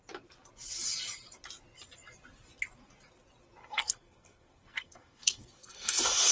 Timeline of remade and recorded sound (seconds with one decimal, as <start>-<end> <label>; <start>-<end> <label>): 0.0-3.6 recorded; 3.6-6.3 remade

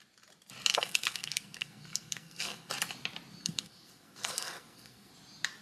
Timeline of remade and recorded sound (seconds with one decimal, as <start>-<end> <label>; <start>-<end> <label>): 0.0-0.7 recorded; 0.7-2.7 remade; 2.7-3.4 recorded; 3.4-5.1 remade; 5.1-5.6 recorded